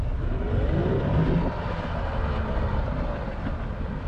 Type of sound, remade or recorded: recorded